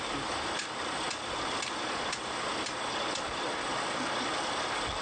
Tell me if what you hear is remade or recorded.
recorded